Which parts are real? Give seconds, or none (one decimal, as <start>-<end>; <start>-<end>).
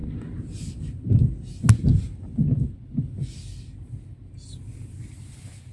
0.0-5.7